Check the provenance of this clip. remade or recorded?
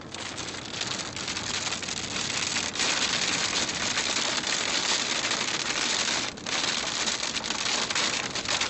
recorded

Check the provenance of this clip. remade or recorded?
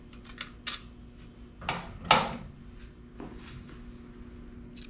recorded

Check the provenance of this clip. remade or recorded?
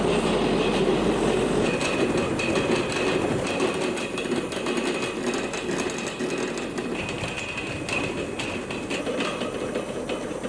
recorded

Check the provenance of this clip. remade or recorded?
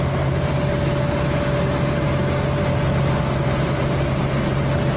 recorded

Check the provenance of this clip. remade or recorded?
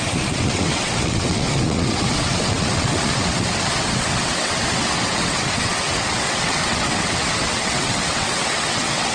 remade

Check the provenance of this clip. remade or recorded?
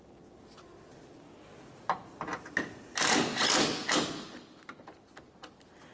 recorded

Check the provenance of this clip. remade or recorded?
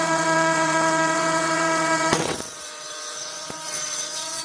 remade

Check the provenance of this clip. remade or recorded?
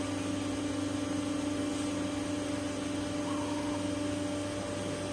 recorded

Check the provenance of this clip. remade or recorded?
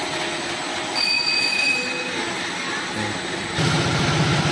recorded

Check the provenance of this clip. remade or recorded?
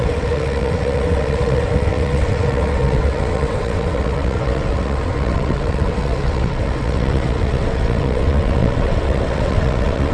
remade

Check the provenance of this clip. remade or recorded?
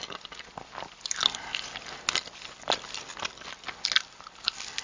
recorded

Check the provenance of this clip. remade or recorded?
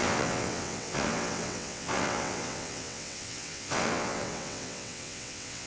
remade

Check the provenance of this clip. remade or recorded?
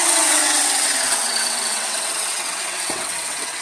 remade